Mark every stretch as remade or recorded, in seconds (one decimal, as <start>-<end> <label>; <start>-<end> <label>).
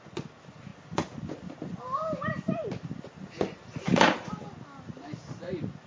0.0-5.9 recorded